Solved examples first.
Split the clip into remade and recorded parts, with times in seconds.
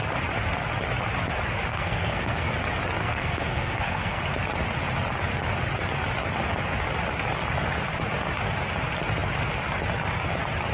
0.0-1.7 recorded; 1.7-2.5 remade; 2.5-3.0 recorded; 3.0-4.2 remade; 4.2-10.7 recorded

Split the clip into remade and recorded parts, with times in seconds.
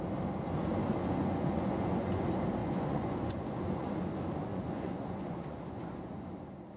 0.0-1.0 recorded; 1.0-2.2 remade; 2.2-2.6 recorded; 2.6-3.9 remade; 3.9-4.5 recorded; 4.5-6.2 remade; 6.2-6.8 recorded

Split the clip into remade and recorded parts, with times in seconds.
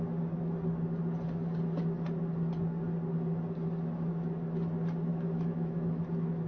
0.0-5.1 recorded; 5.1-6.0 remade; 6.0-6.5 recorded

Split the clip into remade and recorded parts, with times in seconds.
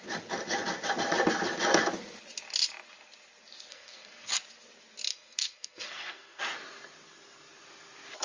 0.0-3.7 recorded; 3.7-4.3 remade; 4.3-5.1 recorded; 5.1-6.4 remade; 6.4-8.2 recorded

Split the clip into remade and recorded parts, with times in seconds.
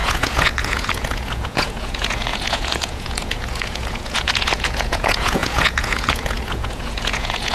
0.0-7.5 remade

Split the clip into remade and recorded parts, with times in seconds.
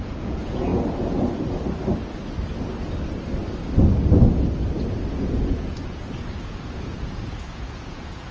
0.0-0.7 remade; 0.7-5.1 recorded; 5.1-8.3 remade